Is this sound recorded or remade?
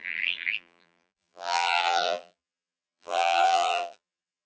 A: remade